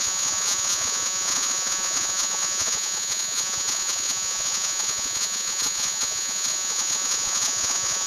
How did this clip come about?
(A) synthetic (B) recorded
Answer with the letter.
A